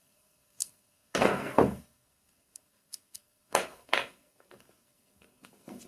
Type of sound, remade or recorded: remade